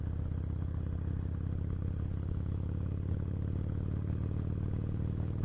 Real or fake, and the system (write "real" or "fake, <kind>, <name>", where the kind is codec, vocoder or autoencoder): real